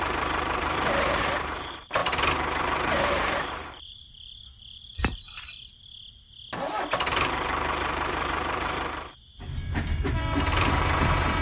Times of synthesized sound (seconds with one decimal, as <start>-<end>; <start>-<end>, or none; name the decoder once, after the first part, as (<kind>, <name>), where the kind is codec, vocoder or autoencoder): 0.0-2.0 (vocoder, BigVGAN v2); 2.6-5.7; 7.1-11.4